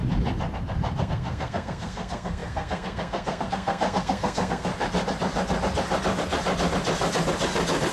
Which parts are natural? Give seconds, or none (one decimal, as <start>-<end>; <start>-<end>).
0.0-1.0; 4.7-7.9